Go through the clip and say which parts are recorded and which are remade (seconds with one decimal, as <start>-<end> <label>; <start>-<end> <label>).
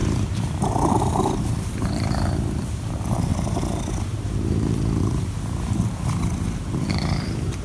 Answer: 0.0-3.3 remade; 3.3-6.9 recorded; 6.9-7.6 remade